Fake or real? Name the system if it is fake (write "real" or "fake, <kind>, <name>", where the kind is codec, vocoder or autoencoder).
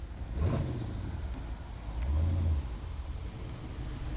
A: real